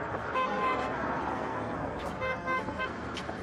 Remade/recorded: remade